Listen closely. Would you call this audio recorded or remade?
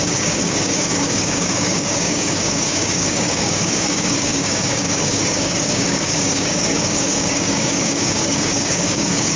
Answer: remade